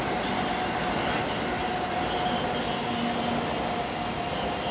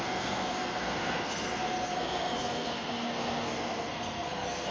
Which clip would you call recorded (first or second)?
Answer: first